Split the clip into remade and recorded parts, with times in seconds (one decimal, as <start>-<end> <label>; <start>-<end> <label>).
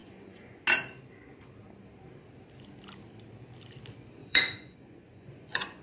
0.0-0.6 remade; 0.6-4.2 recorded; 4.2-5.8 remade